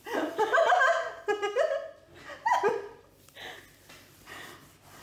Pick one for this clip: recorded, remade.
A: recorded